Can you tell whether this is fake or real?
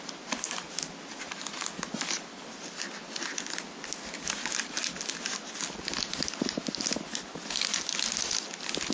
real